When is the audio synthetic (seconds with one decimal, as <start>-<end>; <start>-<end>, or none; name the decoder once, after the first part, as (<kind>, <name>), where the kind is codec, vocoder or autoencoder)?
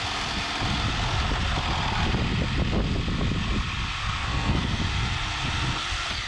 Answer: 4.0-4.8 (codec, SNAC)